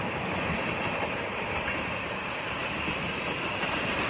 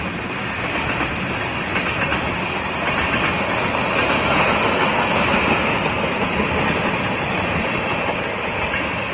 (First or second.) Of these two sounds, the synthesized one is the first